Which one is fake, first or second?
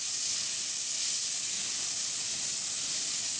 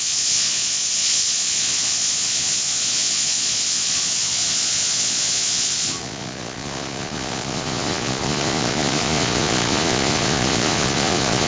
second